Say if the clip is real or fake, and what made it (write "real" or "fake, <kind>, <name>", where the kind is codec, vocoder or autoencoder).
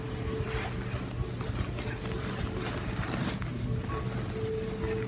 real